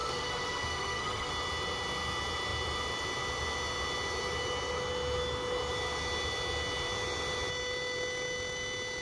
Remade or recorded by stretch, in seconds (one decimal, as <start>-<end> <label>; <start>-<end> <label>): 0.0-1.3 remade; 1.3-9.0 recorded